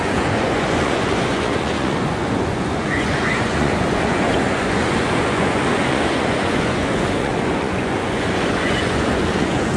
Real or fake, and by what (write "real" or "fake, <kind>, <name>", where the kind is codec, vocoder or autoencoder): fake, vocoder, Vocos